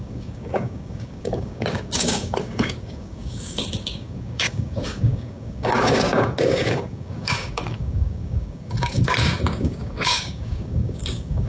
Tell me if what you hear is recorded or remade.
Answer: remade